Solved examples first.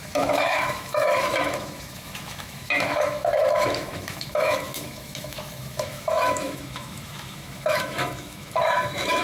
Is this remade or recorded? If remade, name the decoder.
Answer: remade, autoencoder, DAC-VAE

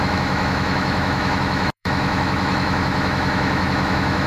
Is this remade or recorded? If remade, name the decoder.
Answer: remade, autoencoder, DAC-VAE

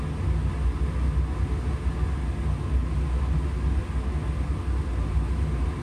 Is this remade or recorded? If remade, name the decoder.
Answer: recorded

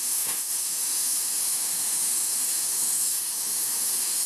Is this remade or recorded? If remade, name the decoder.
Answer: remade, autoencoder, DAC-VAE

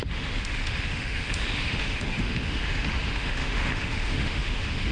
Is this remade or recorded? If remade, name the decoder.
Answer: remade, autoencoder, DAC-VAE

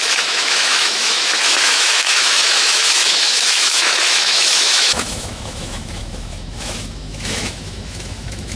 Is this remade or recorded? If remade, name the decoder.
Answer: remade, autoencoder, DAC-VAE